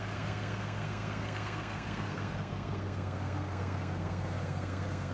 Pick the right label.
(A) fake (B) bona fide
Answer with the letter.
A